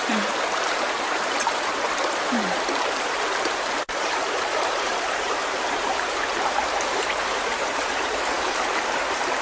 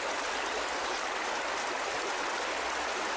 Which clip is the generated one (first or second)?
first